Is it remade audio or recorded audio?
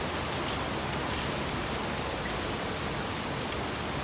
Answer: recorded